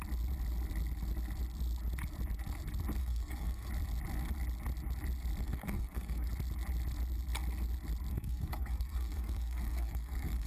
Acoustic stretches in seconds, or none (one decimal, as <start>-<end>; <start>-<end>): 0.0-3.0; 3.7-5.4; 6.3-8.1